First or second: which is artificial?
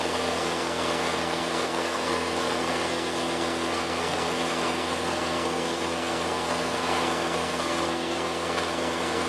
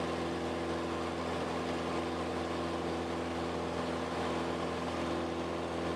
first